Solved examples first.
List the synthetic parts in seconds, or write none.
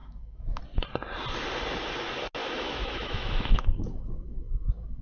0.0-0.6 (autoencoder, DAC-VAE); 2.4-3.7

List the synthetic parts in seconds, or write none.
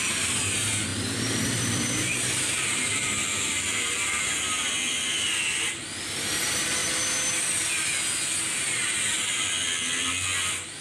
0.9-4.2 (vocoder, BigVGAN v2)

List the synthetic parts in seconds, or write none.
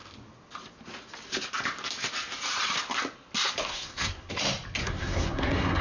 3.7-4.3 (codec, SNAC); 4.8-5.8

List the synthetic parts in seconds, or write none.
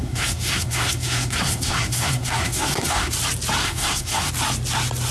0.0-3.1 (codec, SNAC); 3.6-4.3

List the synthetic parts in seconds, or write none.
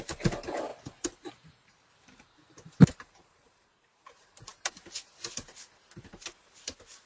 0.7-4.4 (vocoder, BigVGAN v2)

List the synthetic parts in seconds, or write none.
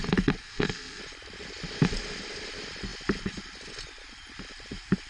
0.4-1.0 (codec, SNAC)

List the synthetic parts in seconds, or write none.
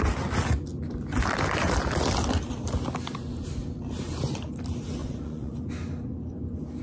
5.0-5.6 (vocoder, Vocos)